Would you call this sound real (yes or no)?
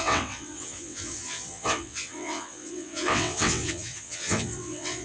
no